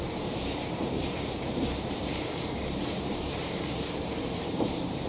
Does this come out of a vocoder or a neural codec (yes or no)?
yes